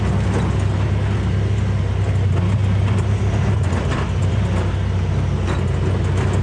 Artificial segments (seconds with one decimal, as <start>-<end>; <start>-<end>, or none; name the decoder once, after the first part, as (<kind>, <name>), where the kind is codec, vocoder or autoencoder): 2.6-4.7 (vocoder, BigVGAN v2)